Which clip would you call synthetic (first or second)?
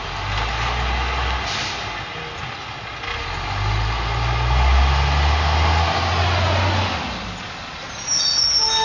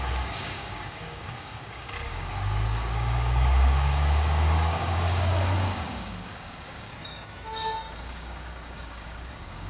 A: second